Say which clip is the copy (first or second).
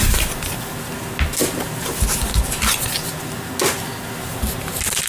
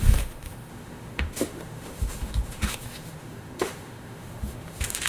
second